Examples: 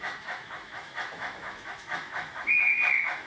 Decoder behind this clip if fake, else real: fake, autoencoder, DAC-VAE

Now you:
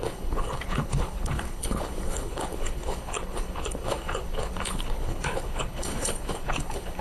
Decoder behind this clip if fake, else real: fake, codec, HILCodec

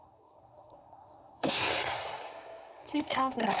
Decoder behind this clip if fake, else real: fake, codec, SNAC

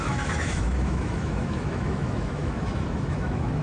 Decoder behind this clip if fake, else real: fake, autoencoder, DAC-VAE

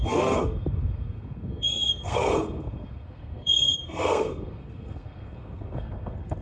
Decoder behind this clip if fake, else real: fake, codec, SNAC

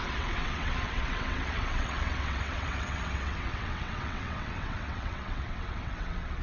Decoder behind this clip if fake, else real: fake, vocoder, WaveNeXt